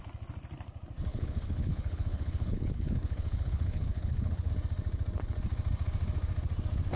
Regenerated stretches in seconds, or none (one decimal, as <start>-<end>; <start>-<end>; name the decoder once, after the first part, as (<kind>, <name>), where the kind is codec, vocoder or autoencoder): 1.1-4.5 (codec, HILCodec)